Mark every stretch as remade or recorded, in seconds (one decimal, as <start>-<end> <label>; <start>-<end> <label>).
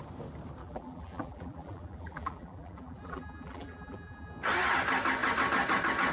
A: 0.0-0.6 recorded; 0.6-4.3 remade; 4.3-6.1 recorded